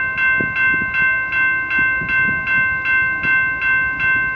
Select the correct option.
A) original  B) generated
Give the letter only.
A